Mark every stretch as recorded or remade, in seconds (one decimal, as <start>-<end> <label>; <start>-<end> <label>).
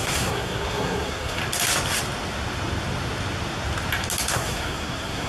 0.0-1.4 remade; 1.4-4.3 recorded; 4.3-5.3 remade